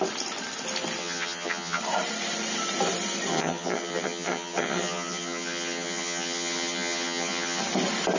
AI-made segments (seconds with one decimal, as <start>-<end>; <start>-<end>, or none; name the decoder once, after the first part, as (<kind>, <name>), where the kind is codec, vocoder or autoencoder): 1.0-1.8 (vocoder, HiFi-GAN); 3.3-7.6